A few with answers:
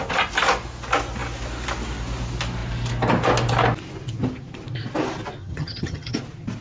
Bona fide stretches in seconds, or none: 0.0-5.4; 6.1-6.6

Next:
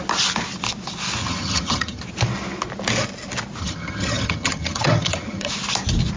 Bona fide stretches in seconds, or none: 0.0-1.2; 2.0-3.6; 5.5-6.2